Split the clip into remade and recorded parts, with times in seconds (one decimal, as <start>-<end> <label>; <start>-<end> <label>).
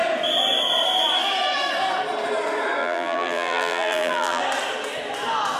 0.0-2.8 recorded; 2.8-4.4 remade; 4.4-5.6 recorded